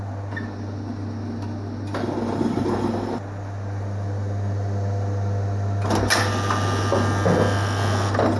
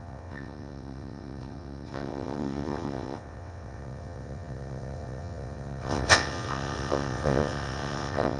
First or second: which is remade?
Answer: second